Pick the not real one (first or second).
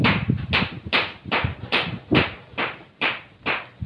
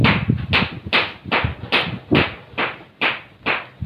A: first